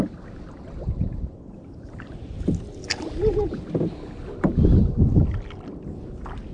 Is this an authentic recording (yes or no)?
yes